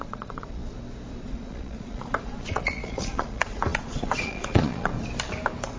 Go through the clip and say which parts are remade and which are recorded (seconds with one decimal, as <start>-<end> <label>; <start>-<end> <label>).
0.0-0.6 remade; 0.6-1.2 recorded; 1.2-4.9 remade; 4.9-5.8 recorded